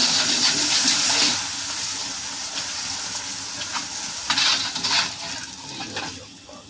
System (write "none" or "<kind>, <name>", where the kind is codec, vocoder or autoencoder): none